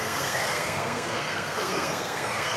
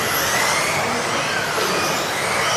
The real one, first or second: second